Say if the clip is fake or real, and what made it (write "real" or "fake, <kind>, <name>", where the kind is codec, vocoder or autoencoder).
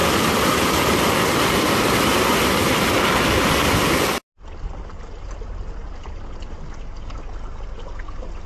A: real